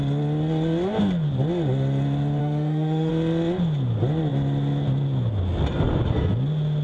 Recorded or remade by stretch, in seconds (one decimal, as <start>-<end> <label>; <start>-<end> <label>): 0.0-2.4 recorded; 2.4-3.1 remade; 3.1-6.8 recorded